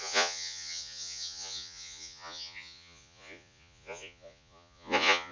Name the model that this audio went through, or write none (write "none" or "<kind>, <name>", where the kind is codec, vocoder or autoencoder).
vocoder, Vocos